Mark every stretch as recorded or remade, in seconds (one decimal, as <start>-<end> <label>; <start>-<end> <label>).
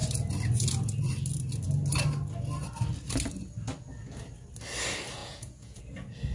0.0-5.2 recorded; 5.2-5.8 remade; 5.8-6.3 recorded